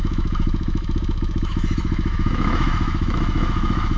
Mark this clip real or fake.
fake